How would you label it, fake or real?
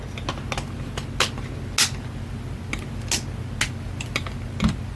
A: real